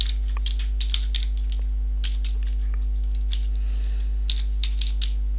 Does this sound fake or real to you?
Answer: real